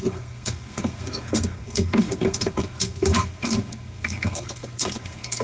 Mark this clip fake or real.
fake